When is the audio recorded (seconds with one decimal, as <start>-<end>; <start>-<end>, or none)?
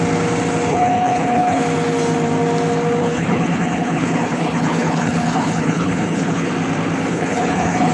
0.0-0.7; 1.6-3.0; 6.5-7.1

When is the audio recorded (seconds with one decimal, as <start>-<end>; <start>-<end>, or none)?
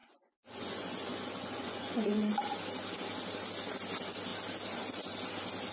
2.4-5.7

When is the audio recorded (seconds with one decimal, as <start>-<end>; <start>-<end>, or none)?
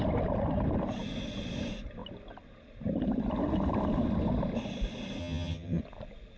0.0-5.2; 5.8-6.4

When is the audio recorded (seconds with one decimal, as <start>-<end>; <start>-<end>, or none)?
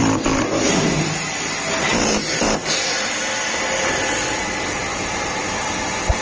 0.0-6.2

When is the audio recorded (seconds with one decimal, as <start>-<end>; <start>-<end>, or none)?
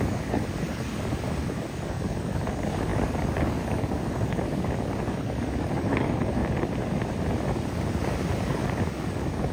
6.4-8.4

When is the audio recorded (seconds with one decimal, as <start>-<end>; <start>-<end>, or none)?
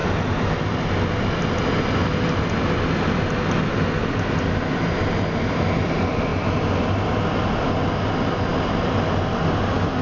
0.0-10.0